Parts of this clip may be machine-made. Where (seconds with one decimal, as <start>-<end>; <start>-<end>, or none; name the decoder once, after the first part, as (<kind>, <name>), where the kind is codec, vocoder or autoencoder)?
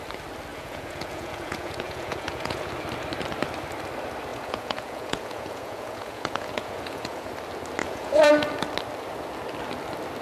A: 0.5-2.7 (vocoder, Vocos); 4.3-7.3; 7.8-8.3